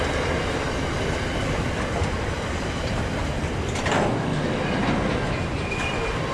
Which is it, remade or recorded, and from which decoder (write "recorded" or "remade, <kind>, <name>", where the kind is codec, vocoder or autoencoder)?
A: recorded